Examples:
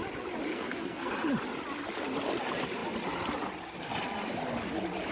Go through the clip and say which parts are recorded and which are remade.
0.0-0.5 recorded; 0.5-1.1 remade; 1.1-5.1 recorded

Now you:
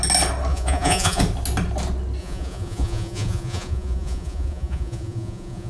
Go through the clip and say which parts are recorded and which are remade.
0.0-0.5 recorded; 0.5-1.2 remade; 1.2-2.2 recorded; 2.2-5.7 remade